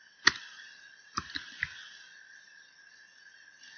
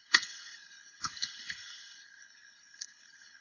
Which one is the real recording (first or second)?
first